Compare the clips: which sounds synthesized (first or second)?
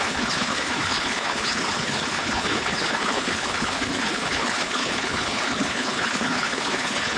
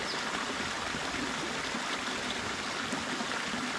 first